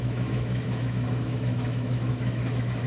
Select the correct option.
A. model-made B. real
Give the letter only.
A